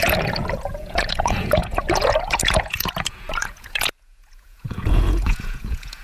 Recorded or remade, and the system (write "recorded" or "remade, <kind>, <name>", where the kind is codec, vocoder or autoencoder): remade, vocoder, Vocos